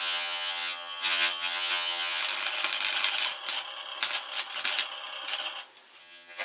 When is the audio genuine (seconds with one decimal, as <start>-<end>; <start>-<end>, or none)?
2.2-6.0